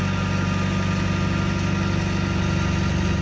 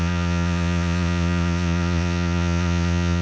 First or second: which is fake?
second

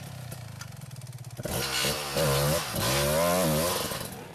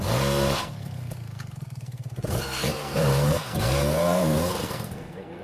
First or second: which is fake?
second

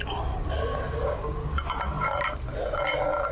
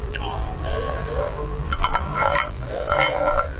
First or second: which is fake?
second